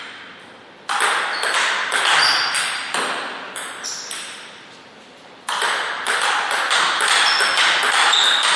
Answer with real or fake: real